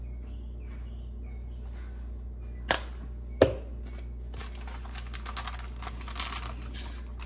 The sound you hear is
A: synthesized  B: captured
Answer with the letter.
B